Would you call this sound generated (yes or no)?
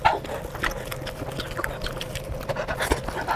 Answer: no